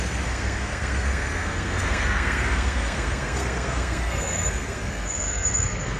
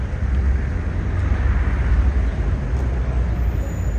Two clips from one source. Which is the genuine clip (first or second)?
second